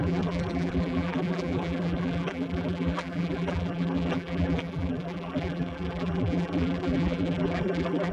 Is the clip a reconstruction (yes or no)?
yes